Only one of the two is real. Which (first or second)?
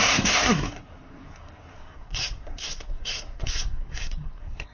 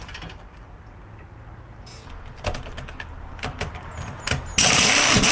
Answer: second